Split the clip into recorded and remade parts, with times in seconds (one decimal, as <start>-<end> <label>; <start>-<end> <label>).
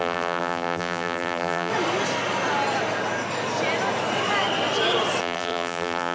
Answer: 0.0-1.7 remade; 1.7-5.2 recorded; 5.2-6.1 remade